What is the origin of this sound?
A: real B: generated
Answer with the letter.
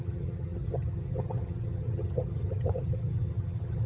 B